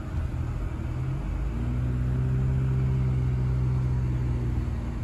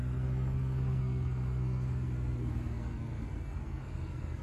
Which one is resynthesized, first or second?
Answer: second